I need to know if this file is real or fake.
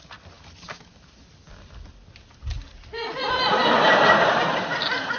real